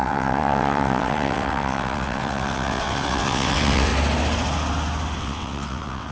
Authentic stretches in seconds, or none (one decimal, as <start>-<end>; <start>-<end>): 3.9-5.2